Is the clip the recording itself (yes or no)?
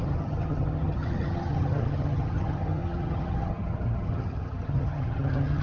no